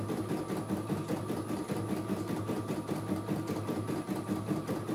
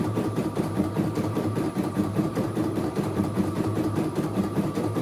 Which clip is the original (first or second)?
first